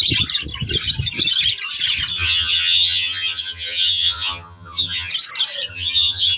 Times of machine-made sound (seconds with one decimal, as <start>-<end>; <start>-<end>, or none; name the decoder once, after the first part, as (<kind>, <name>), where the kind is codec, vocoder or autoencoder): 2.1-5.1 (vocoder, HiFi-GAN); 5.7-6.4